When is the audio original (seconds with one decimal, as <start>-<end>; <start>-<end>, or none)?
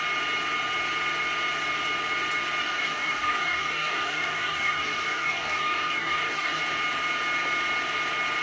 0.0-2.6; 6.6-8.4